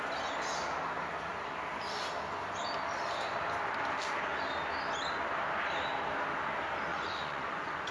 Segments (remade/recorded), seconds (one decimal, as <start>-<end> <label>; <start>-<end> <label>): 0.0-6.9 recorded; 6.9-7.9 remade